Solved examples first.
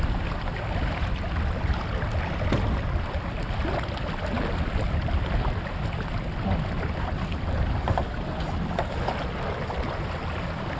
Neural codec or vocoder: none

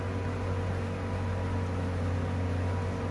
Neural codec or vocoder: none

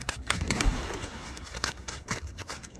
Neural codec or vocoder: codec, SNAC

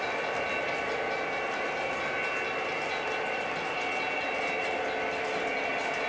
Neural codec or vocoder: none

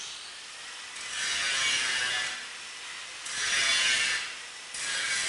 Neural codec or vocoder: none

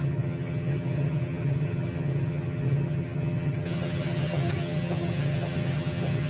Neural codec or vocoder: vocoder, HiFi-GAN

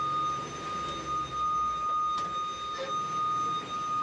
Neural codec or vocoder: none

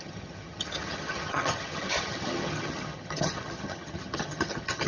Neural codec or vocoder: vocoder, HiFi-GAN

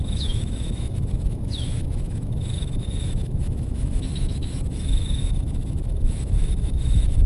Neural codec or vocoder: autoencoder, DAC-VAE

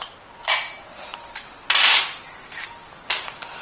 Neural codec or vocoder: none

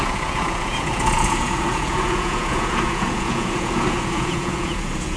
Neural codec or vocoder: vocoder, Vocos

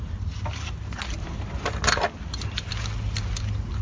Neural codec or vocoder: none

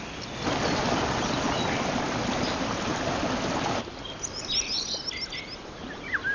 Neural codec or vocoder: none